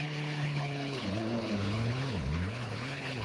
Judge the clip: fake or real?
fake